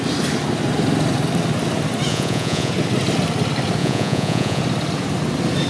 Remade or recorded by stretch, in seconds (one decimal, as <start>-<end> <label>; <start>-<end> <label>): 0.0-2.1 recorded; 2.1-2.7 remade; 2.7-3.8 recorded; 3.8-4.6 remade; 4.6-5.7 recorded

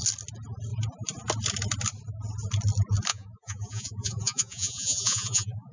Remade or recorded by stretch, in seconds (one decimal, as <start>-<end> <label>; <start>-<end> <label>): 0.0-3.1 recorded; 3.1-5.7 remade

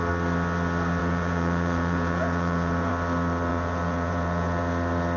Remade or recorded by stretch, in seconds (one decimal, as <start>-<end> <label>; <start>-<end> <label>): 0.0-1.0 recorded; 1.0-2.9 remade; 2.9-3.5 recorded; 3.5-4.6 remade; 4.6-5.2 recorded